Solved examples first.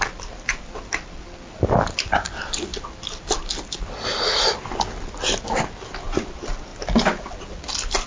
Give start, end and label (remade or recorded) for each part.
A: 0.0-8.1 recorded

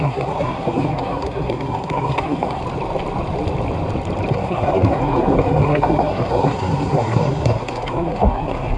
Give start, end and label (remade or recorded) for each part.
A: 0.0-2.6 remade; 2.6-4.3 recorded; 4.3-8.8 remade

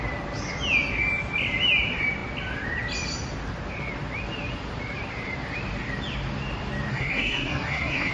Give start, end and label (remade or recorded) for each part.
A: 0.0-6.9 recorded; 6.9-8.1 remade

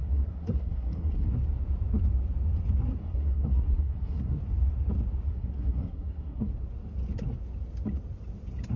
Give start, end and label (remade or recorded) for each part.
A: 0.0-1.3 remade; 1.3-3.0 recorded; 3.0-4.4 remade; 4.4-5.3 recorded; 5.3-6.5 remade; 6.5-8.8 recorded

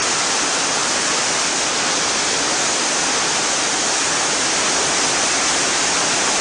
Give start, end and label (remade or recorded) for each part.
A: 0.0-6.4 recorded

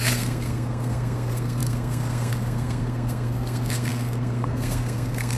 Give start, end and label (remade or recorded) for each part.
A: 0.0-5.4 remade

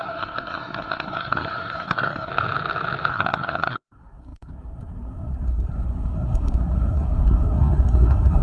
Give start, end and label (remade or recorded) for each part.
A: 0.0-2.3 remade; 2.3-3.1 recorded; 3.1-8.4 remade

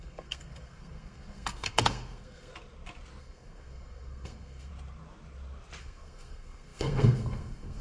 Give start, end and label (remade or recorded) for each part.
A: 0.0-2.5 remade; 2.5-3.2 recorded; 3.2-4.7 remade; 4.7-5.8 recorded; 5.8-7.8 remade